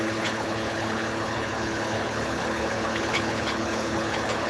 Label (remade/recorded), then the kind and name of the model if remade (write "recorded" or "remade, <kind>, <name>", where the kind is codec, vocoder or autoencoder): remade, codec, HILCodec